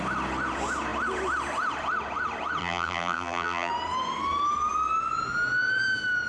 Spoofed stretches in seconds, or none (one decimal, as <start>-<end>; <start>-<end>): 2.6-3.7